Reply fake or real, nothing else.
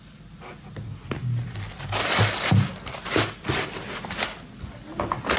real